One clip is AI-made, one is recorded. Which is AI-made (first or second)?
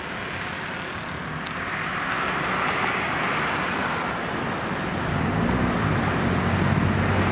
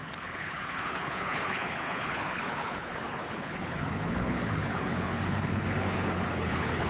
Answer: second